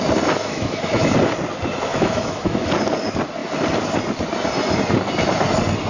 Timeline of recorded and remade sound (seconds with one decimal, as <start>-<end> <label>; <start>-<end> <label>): 0.0-0.4 recorded; 0.4-1.1 remade; 1.1-1.9 recorded; 1.9-2.7 remade; 2.7-5.9 recorded